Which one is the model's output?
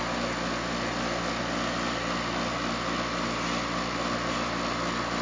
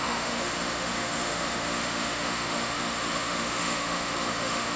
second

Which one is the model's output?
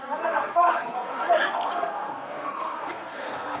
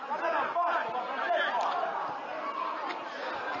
first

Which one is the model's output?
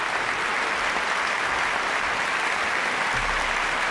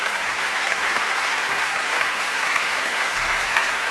second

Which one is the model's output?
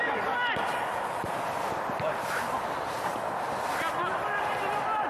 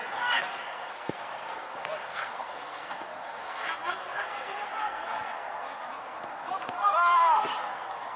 second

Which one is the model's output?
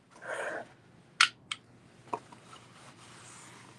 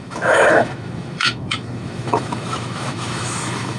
second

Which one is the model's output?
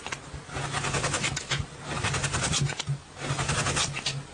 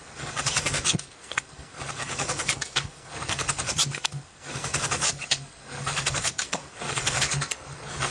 second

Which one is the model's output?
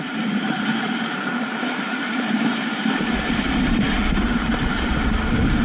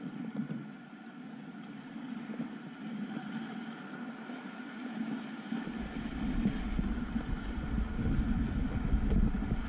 first